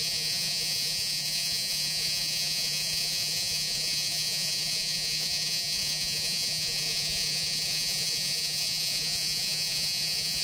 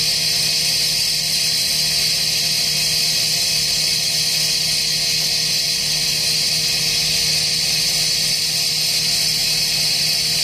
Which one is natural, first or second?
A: second